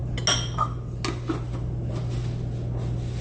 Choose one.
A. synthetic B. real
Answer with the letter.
B